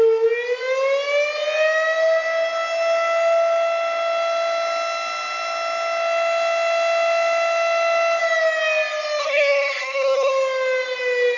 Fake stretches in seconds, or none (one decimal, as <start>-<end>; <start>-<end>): 9.2-10.3